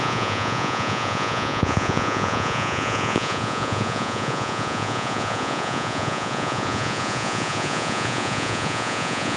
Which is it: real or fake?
fake